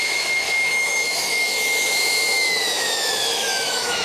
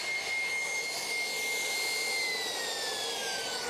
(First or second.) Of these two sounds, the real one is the second